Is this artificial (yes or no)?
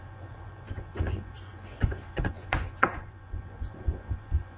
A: yes